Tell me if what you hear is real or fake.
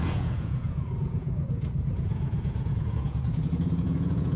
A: fake